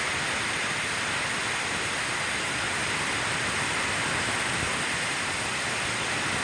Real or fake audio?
real